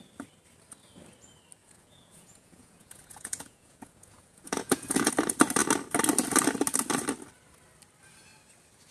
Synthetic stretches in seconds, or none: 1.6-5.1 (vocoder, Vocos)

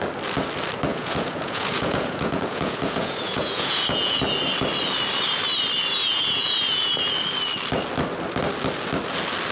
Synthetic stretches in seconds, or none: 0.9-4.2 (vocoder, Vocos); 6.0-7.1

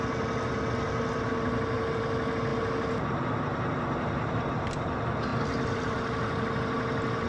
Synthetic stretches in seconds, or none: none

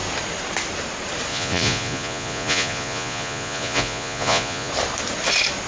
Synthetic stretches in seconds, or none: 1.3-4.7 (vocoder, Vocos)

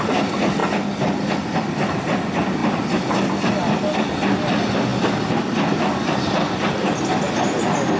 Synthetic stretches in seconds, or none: none

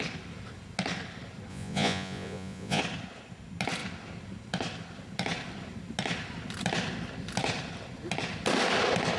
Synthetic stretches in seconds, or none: 1.5-2.8 (vocoder, Vocos)

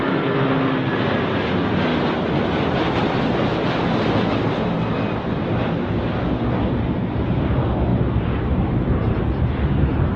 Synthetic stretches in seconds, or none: none

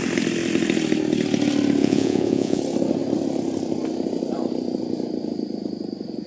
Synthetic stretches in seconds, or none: 1.8-2.6 (vocoder, Vocos)